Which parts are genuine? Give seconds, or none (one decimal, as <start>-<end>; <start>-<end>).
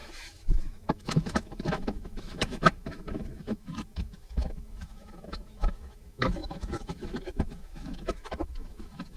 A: none